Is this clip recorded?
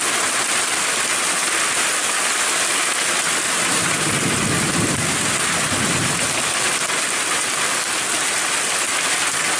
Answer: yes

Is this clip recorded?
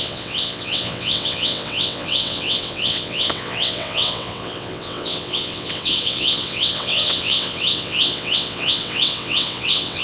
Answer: no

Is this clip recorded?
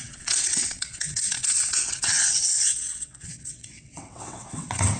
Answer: no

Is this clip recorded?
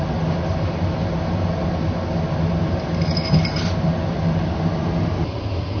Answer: yes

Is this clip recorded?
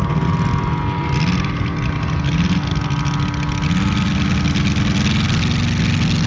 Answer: yes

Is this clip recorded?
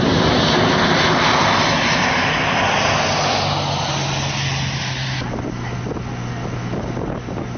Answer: yes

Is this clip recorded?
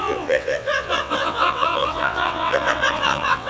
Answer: no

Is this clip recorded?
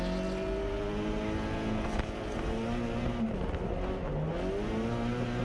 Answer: yes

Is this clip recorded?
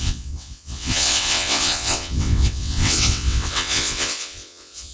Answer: no